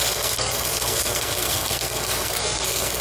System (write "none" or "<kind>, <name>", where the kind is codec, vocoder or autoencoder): codec, SNAC